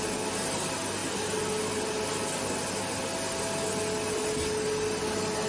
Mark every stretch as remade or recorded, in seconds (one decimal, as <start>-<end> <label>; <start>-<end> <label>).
0.0-5.5 recorded